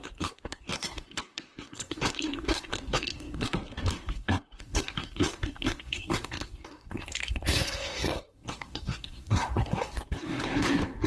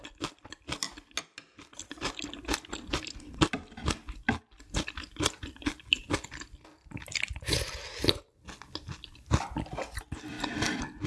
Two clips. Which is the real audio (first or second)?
second